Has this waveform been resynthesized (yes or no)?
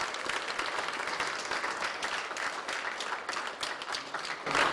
no